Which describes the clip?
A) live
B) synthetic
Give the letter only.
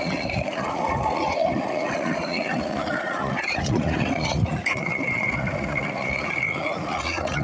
B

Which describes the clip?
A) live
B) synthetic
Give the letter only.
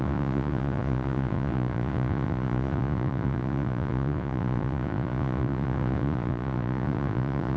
B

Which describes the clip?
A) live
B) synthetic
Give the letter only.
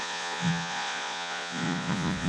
B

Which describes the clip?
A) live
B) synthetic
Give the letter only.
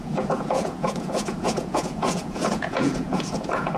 B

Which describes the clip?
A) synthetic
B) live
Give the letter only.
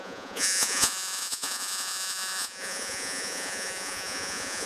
A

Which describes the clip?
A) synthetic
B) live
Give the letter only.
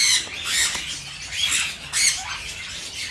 B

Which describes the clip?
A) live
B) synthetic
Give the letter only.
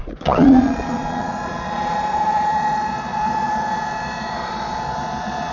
B